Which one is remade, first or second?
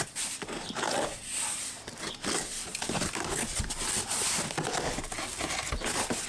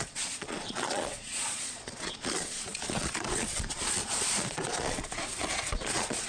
second